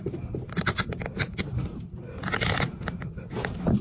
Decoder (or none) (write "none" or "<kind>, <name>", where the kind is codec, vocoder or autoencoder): vocoder, BigVGAN v2